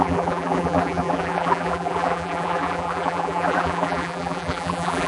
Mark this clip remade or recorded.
remade